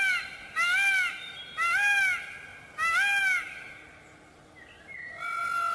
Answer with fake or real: real